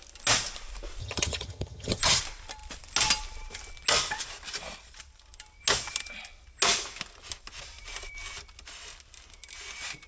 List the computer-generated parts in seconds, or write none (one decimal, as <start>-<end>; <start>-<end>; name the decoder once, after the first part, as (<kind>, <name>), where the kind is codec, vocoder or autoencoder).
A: 1.0-2.2 (vocoder, HiFi-GAN)